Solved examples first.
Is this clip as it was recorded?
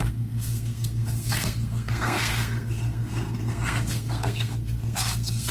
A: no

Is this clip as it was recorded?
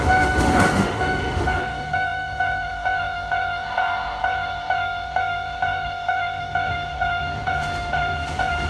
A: no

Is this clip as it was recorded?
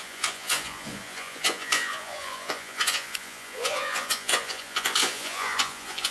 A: no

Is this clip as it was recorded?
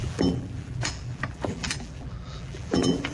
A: no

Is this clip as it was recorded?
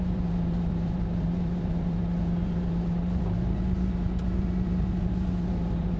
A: no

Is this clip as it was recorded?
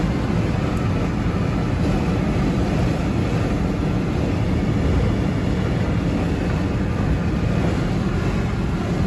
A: yes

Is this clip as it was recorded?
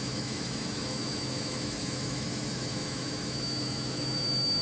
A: no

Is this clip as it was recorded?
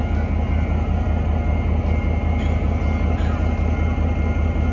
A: yes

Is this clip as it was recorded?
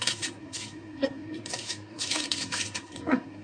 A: no